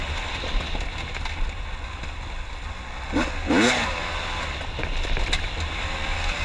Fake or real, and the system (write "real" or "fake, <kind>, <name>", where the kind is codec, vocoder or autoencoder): real